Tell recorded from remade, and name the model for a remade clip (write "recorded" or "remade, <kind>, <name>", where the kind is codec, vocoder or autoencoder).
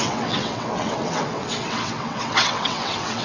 remade, vocoder, WaveNeXt